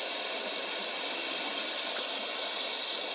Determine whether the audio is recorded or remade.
recorded